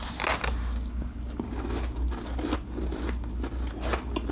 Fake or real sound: real